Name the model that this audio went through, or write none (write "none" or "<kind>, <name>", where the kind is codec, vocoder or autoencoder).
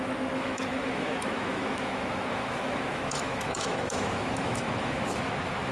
autoencoder, DAC-VAE